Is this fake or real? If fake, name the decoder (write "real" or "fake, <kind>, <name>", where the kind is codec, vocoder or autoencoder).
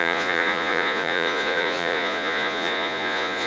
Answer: fake, vocoder, Vocos